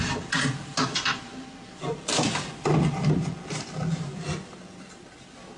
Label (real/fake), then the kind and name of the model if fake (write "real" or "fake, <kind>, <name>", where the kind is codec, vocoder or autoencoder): real